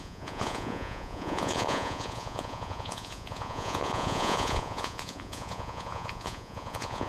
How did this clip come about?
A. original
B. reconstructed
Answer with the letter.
B